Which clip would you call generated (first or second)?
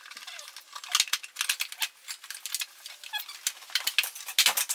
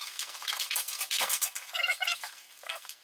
second